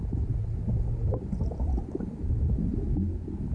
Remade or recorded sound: recorded